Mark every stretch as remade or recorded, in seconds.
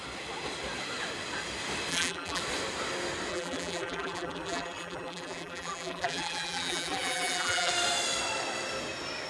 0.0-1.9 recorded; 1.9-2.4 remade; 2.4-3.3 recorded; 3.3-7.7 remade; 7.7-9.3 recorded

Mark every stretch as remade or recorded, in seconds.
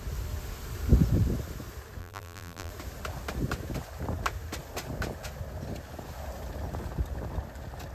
0.0-2.0 recorded; 2.0-2.7 remade; 2.7-7.9 recorded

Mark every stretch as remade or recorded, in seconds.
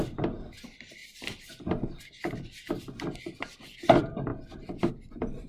0.0-1.0 remade; 1.0-3.2 recorded; 3.2-4.3 remade; 4.3-4.9 recorded; 4.9-5.5 remade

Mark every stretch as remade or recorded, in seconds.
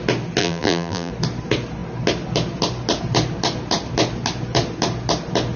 0.0-0.4 recorded; 0.4-1.1 remade; 1.1-5.6 recorded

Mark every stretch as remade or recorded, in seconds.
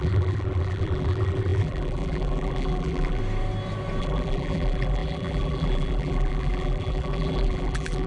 0.0-3.2 remade; 3.2-4.0 recorded; 4.0-8.1 remade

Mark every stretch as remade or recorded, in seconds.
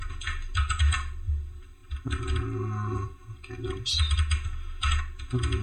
0.0-5.6 recorded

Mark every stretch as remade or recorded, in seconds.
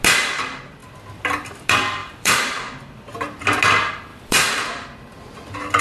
0.0-2.0 recorded; 2.0-2.7 remade; 2.7-4.1 recorded; 4.1-5.2 remade; 5.2-5.8 recorded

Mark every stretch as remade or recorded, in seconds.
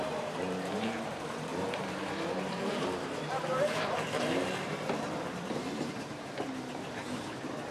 0.0-7.7 remade